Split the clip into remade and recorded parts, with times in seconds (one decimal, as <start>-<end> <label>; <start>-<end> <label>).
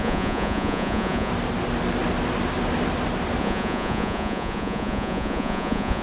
0.0-1.3 remade; 1.3-3.4 recorded; 3.4-6.0 remade